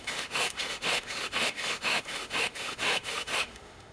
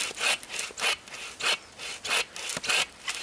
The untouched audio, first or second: second